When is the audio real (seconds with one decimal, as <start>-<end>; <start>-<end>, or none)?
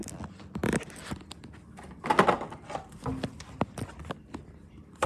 0.0-5.1